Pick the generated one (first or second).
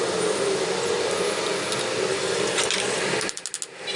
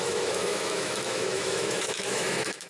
second